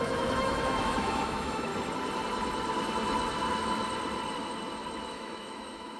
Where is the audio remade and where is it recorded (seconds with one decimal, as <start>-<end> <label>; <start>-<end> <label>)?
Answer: 0.0-1.7 remade; 1.7-5.1 recorded; 5.1-6.0 remade